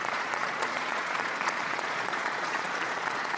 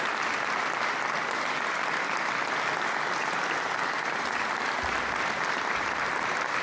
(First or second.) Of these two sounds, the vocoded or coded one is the first